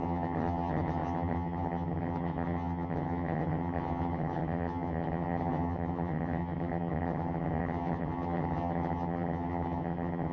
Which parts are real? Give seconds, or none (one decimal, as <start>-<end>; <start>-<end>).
none